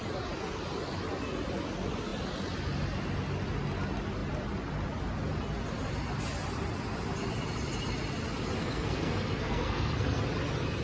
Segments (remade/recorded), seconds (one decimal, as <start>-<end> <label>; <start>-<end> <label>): 0.0-8.6 recorded; 8.6-10.2 remade; 10.2-10.8 recorded